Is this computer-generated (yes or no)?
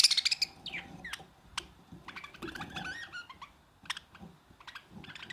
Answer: no